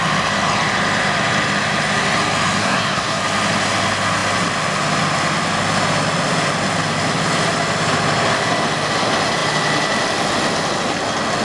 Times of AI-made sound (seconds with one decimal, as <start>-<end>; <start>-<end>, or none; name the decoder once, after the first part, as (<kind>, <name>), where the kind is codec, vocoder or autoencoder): 2.6-3.2 (codec, SNAC)